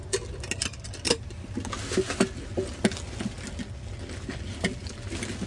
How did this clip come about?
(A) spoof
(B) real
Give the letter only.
B